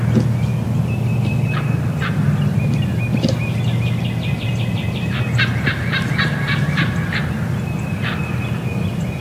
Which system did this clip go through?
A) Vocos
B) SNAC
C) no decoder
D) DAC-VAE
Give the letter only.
C